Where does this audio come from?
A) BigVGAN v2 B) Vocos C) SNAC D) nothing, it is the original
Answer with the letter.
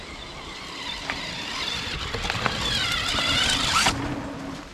D